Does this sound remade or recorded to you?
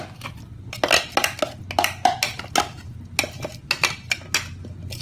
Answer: recorded